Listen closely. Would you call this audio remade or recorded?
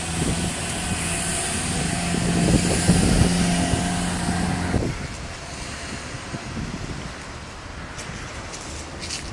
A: recorded